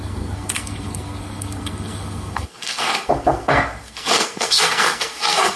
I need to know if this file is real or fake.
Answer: fake